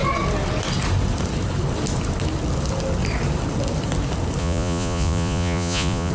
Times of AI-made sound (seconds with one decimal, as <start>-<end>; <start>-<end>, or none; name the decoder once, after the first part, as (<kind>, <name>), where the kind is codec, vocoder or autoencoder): 4.4-6.1 (vocoder, Vocos)